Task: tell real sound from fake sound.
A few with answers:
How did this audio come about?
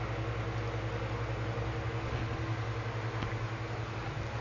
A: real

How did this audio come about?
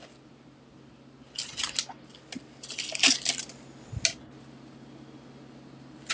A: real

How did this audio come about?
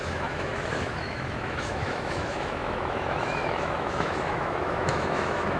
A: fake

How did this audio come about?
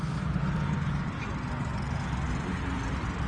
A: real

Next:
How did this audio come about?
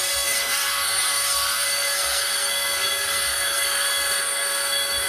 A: fake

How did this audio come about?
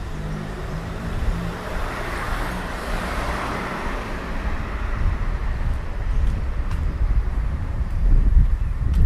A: fake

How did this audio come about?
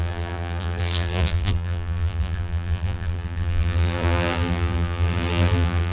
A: fake